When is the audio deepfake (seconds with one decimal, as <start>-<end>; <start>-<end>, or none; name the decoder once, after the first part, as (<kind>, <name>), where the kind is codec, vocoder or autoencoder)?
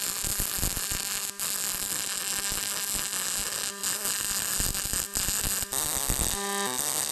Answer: none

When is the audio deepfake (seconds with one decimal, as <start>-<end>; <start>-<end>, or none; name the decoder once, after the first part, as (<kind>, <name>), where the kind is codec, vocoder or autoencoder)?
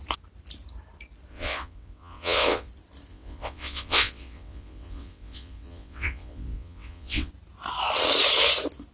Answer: 1.3-2.7 (vocoder, WaveNeXt); 3.1-7.3